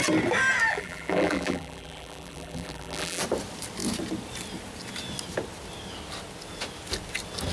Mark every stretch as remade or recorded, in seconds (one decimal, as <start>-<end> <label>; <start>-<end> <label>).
0.0-0.7 recorded; 0.7-3.2 remade; 3.2-7.5 recorded